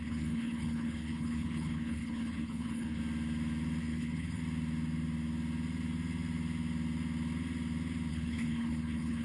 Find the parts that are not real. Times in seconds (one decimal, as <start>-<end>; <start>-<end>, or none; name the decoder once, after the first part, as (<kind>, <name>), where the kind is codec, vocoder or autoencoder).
0.0-3.0 (codec, HILCodec); 3.8-4.4; 8.1-9.2